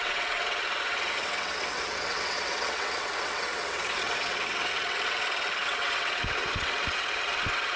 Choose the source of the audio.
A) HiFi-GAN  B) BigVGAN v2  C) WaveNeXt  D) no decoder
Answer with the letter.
C